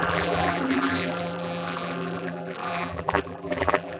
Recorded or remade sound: remade